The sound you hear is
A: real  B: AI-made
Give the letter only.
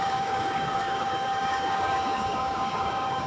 B